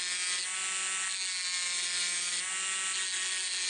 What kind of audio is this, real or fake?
real